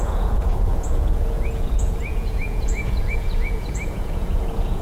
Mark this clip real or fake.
fake